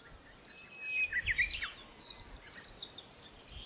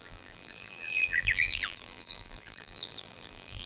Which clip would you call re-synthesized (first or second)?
second